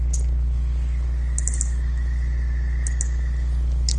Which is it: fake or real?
real